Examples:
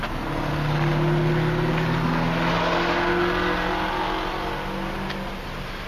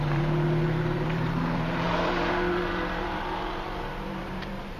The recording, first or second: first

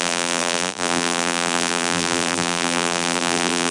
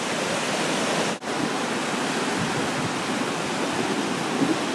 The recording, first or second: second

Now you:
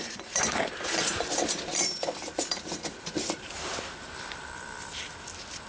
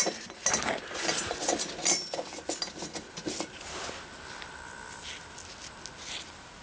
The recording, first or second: second